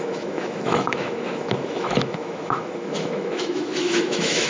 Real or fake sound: fake